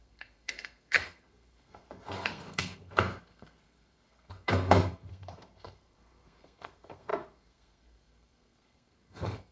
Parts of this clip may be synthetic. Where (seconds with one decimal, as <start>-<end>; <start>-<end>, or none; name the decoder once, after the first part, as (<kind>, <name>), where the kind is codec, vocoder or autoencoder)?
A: 0.0-9.5 (codec, SNAC)